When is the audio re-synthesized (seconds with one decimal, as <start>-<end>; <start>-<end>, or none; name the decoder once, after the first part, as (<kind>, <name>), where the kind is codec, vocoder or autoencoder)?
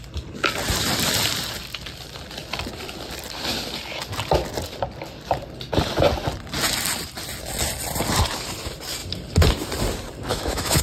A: 10.3-10.8 (autoencoder, DAC-VAE)